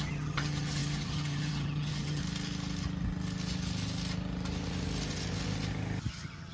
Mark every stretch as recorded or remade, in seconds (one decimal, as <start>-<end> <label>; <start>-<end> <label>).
0.0-2.2 remade; 2.2-6.1 recorded; 6.1-6.5 remade